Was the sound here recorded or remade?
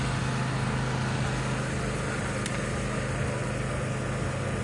recorded